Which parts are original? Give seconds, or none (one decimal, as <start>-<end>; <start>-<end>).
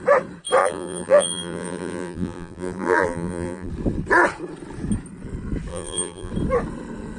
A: 0.0-0.6; 3.7-5.7; 6.3-7.2